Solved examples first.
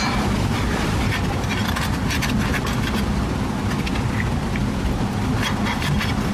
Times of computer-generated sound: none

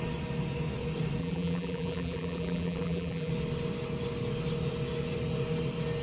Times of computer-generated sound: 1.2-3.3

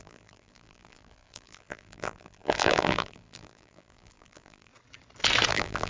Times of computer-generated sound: 0.0-4.7; 5.5-5.9

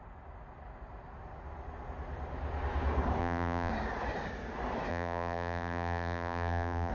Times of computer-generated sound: 3.2-3.7; 4.9-6.9